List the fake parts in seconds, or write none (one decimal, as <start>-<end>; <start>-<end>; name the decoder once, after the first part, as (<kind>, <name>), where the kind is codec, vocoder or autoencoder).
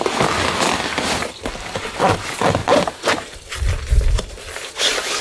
none